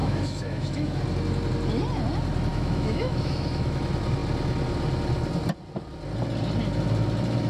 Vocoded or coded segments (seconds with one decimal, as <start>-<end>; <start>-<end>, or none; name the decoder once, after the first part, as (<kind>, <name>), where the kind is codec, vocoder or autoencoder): 0.0-1.0 (autoencoder, DAC-VAE); 2.5-3.8